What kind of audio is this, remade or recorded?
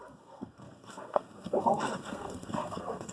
remade